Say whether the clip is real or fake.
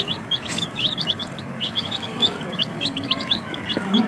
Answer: fake